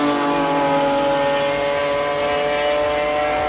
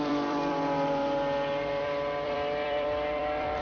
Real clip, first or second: first